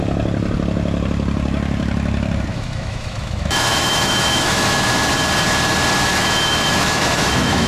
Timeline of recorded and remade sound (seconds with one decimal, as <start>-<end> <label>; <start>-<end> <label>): 0.0-2.5 recorded; 2.5-5.1 remade; 5.1-6.1 recorded; 6.1-7.7 remade